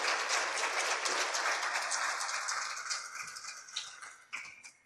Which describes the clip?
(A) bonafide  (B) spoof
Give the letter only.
A